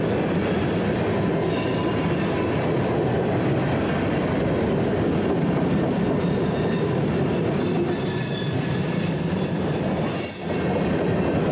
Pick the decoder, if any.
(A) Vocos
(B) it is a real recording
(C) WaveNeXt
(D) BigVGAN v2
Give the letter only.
B